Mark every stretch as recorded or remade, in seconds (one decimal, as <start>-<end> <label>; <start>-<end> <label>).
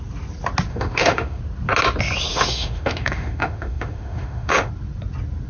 0.0-0.7 recorded; 0.7-1.4 remade; 1.4-2.3 recorded; 2.3-4.7 remade; 4.7-5.5 recorded